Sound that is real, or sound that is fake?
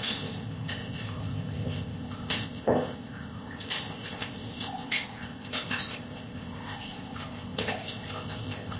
fake